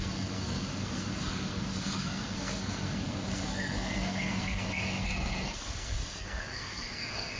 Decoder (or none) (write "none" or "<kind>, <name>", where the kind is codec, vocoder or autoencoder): codec, SNAC